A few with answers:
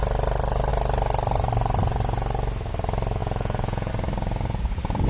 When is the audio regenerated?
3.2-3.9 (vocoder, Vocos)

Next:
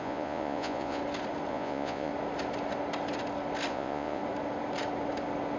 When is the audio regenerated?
0.0-1.0 (vocoder, Vocos); 1.5-2.1; 3.7-4.2